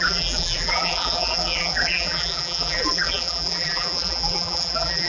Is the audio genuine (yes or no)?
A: no